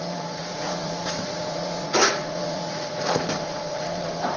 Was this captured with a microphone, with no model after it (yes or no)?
no